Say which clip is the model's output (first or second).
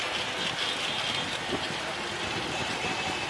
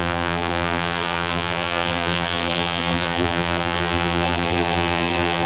second